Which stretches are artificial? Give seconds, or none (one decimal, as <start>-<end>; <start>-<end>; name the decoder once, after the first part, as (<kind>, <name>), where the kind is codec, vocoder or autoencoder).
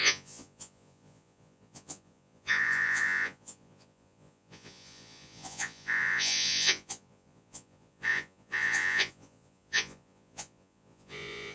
0.0-11.5 (vocoder, Vocos)